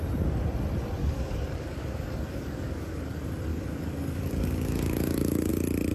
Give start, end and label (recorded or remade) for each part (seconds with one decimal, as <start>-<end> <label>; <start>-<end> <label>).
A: 0.0-1.0 recorded; 1.0-3.0 remade; 3.0-3.5 recorded; 3.5-5.5 remade; 5.5-5.9 recorded